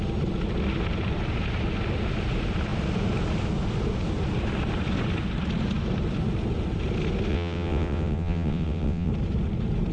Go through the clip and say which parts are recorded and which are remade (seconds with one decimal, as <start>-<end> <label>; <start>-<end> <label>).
0.0-7.3 recorded; 7.3-9.1 remade; 9.1-9.9 recorded